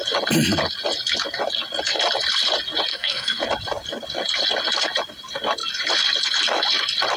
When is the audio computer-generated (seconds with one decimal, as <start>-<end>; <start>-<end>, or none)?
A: 2.9-3.4